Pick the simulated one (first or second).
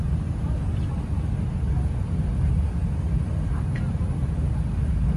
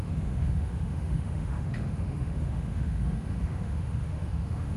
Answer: second